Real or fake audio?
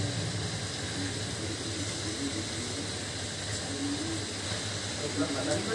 real